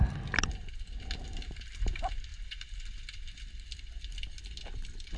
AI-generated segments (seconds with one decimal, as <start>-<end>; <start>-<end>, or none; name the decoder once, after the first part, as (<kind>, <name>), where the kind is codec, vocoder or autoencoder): 1.2-1.8 (vocoder, BigVGAN v2)

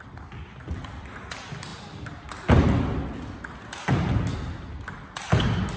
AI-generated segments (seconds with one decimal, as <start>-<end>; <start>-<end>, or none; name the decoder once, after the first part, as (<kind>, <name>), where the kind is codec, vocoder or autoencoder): none

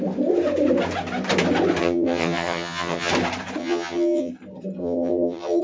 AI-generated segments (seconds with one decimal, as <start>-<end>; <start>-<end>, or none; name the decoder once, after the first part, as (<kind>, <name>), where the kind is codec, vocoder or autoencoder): 1.8-3.1 (vocoder, HiFi-GAN); 3.6-4.3; 4.8-5.6